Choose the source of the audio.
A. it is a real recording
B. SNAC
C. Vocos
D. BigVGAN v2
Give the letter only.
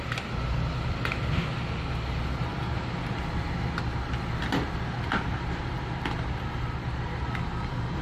A